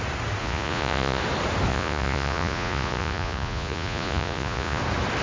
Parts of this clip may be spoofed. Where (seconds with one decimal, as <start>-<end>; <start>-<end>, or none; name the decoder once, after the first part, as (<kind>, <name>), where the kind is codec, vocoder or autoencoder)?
0.4-1.2 (vocoder, Vocos); 1.7-4.8